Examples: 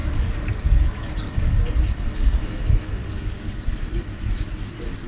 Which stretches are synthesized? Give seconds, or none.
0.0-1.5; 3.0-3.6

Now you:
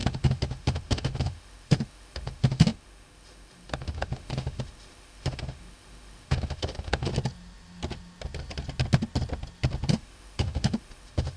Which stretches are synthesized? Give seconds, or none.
0.0-7.1; 9.9-11.4

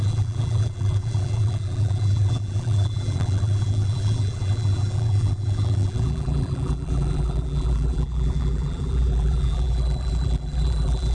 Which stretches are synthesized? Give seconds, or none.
0.0-11.1

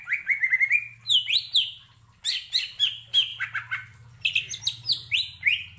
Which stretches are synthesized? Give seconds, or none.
none

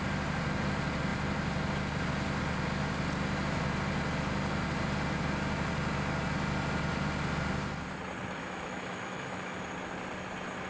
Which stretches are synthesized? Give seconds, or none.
8.4-9.6

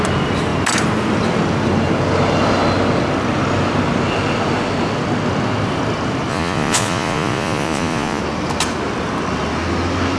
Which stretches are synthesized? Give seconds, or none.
6.3-8.2

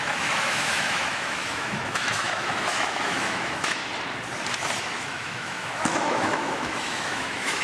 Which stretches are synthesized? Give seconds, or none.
0.0-3.8; 4.8-7.6